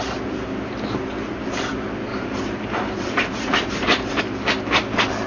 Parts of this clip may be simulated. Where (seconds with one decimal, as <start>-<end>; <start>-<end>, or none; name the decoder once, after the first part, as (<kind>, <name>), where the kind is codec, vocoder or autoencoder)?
2.1-4.2 (vocoder, BigVGAN v2)